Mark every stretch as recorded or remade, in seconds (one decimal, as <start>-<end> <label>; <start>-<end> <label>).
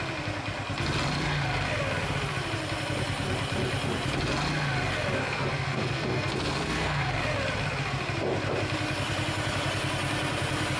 0.0-5.2 recorded; 5.2-7.1 remade; 7.1-10.8 recorded